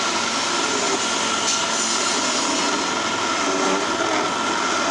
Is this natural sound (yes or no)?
yes